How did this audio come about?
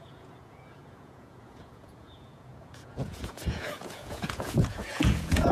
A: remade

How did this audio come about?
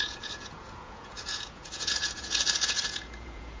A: remade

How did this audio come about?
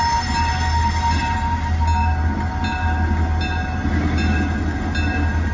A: recorded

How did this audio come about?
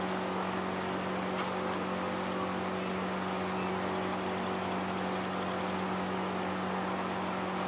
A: recorded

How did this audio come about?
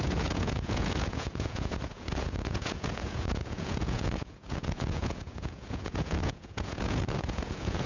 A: remade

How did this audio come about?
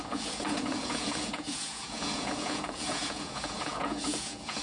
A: remade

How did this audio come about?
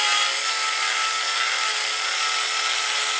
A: recorded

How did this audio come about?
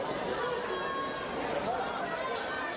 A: recorded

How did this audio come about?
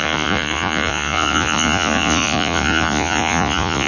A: remade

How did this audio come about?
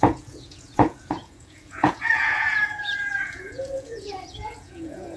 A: remade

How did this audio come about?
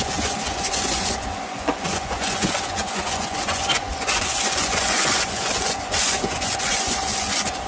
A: remade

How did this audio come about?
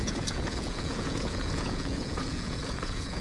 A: remade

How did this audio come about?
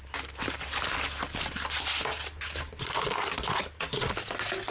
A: recorded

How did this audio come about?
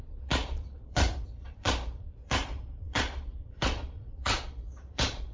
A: remade